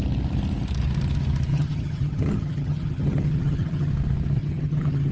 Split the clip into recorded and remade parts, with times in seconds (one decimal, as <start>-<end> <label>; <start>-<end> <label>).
0.0-1.5 recorded; 1.5-3.9 remade; 3.9-4.4 recorded; 4.4-5.1 remade